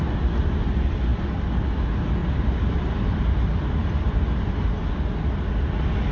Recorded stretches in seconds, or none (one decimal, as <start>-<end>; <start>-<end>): 0.0-6.1